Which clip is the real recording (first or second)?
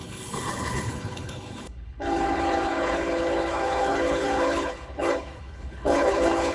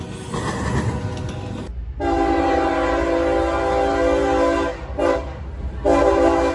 second